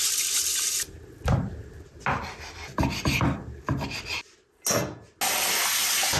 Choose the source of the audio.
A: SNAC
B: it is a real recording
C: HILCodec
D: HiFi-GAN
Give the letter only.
B